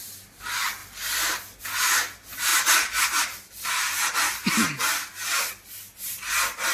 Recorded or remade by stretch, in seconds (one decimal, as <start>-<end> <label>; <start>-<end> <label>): 0.0-6.7 recorded